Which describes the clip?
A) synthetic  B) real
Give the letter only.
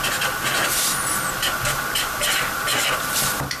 B